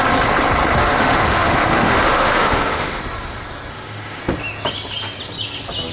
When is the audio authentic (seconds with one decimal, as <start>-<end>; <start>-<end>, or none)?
0.0-0.8; 3.0-3.7; 4.2-5.9